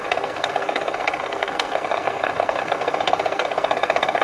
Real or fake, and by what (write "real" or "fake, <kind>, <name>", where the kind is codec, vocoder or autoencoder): fake, codec, SNAC